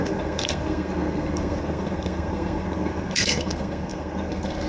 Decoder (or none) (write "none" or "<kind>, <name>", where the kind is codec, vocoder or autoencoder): codec, SNAC